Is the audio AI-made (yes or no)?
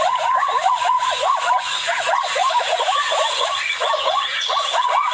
yes